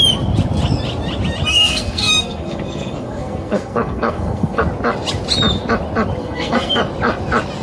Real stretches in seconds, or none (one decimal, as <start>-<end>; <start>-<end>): 0.0-1.5; 4.6-6.2; 6.8-7.6